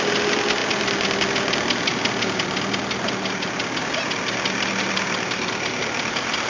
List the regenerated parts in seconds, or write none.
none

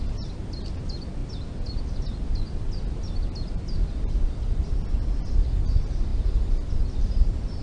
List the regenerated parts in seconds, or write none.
none

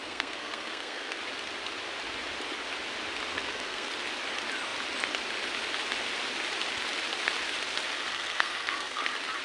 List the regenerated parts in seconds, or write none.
0.0-1.2 (codec, SNAC); 3.3-3.9; 8.1-9.0

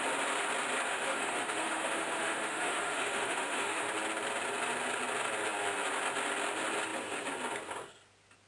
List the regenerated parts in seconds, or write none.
0.9-3.9 (autoencoder, DAC-VAE)